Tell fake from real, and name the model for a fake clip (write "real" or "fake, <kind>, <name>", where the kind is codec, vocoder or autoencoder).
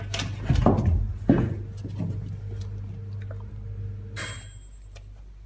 real